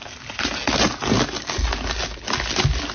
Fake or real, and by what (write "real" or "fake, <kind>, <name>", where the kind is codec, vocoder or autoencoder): real